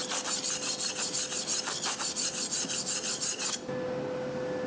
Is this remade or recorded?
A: recorded